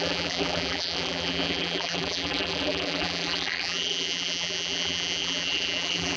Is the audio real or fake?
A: fake